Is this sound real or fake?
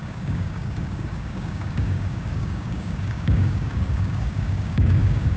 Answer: fake